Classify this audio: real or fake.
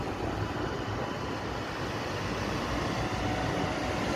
real